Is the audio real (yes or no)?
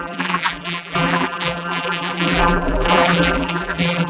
no